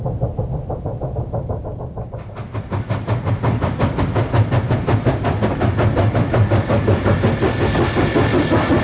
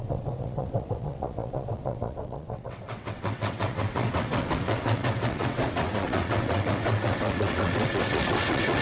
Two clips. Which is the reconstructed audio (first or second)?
second